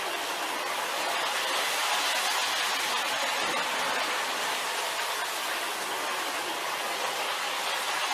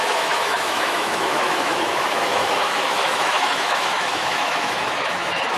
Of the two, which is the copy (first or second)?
second